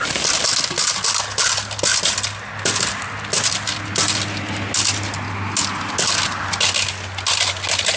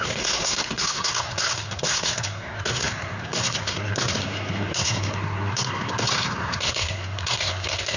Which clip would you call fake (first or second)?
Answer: second